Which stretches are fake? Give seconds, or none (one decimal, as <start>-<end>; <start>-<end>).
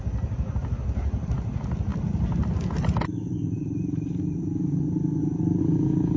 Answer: none